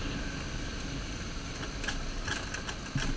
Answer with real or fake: real